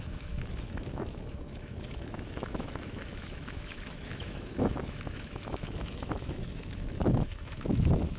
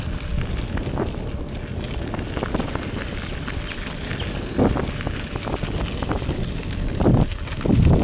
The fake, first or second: first